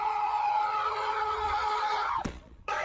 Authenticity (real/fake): fake